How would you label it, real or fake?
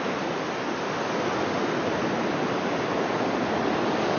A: real